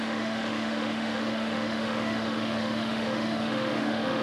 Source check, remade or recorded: remade